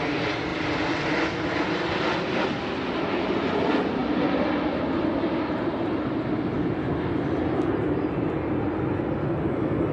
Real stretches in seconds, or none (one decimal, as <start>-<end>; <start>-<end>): 0.0-9.9